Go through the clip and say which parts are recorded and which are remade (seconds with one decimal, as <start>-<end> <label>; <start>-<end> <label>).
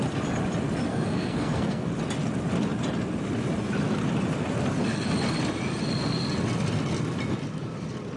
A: 0.0-0.9 recorded; 0.9-1.9 remade; 1.9-8.2 recorded